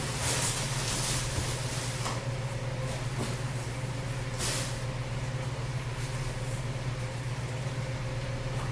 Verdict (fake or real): real